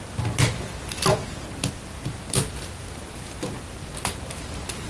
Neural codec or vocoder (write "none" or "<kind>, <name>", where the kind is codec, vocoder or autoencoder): none